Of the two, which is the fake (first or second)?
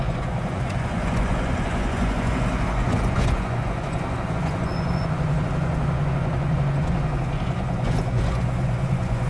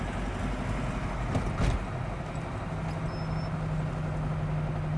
first